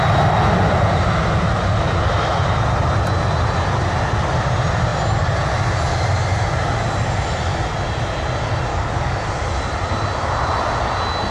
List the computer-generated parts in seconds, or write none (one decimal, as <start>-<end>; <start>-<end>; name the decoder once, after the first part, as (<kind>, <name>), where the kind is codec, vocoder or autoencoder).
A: 8.7-9.3 (codec, DAC)